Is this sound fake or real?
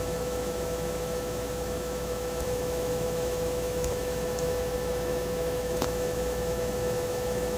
fake